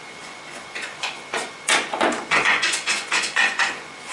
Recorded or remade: remade